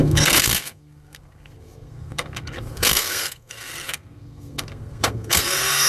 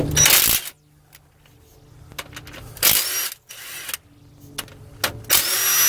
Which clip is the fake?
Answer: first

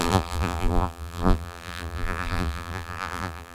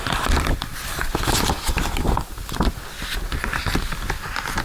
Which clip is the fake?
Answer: first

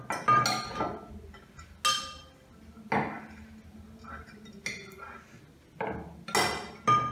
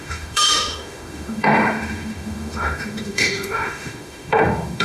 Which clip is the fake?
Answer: second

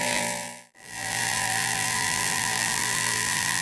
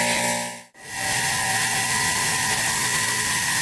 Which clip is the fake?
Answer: first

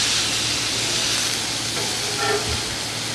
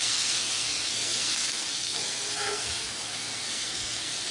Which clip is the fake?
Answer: second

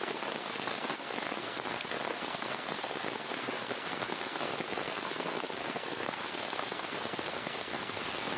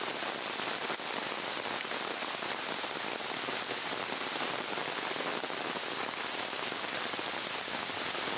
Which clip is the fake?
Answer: first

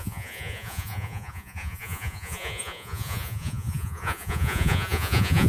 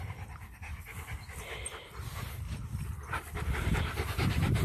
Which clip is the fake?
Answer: first